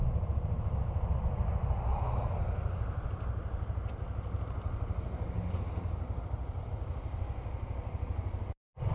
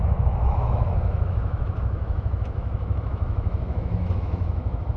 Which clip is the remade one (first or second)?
second